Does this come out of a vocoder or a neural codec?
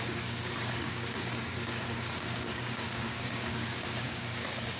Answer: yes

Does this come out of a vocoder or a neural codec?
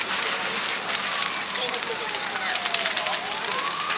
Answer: no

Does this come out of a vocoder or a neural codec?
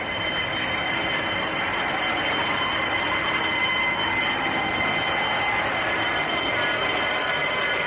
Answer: no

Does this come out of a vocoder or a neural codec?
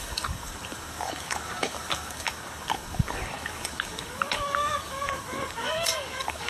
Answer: yes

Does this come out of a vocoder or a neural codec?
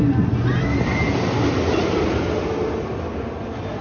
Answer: no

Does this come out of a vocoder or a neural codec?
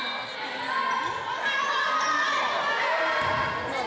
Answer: no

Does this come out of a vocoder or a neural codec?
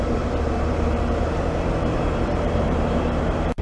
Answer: yes